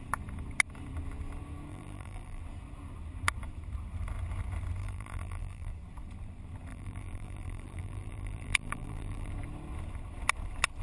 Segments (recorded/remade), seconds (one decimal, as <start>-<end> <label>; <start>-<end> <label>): 0.0-1.7 recorded; 1.7-2.4 remade; 2.4-4.8 recorded; 4.8-5.7 remade; 5.7-6.7 recorded; 6.7-9.3 remade; 9.3-10.8 recorded